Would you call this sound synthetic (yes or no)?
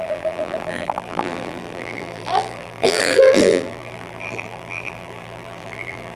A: yes